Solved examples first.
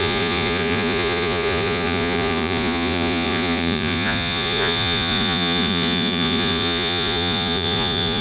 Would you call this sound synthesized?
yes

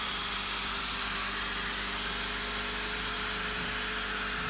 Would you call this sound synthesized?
yes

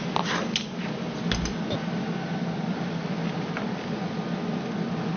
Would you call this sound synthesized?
no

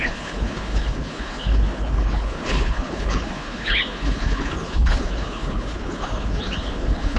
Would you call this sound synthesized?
yes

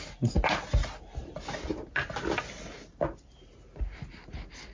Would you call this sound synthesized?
no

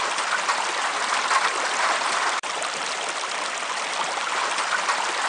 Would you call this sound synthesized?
no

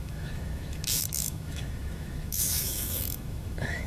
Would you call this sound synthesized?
yes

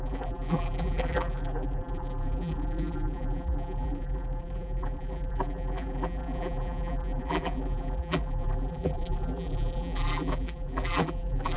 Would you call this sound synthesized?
yes